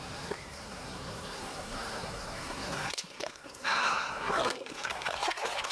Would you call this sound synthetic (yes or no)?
yes